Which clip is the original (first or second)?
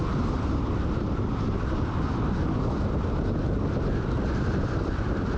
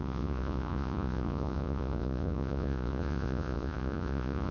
first